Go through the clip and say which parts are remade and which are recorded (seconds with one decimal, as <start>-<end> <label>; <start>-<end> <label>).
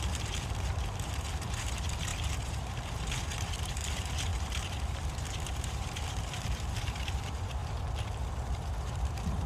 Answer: 0.0-7.6 remade; 7.6-8.8 recorded; 8.8-9.5 remade